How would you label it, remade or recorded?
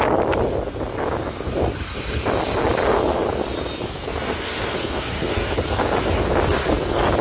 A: recorded